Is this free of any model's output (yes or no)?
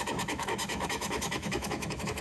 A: no